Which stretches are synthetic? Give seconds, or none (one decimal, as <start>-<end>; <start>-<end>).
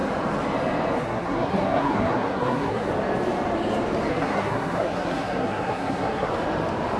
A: 1.0-2.9; 4.1-6.3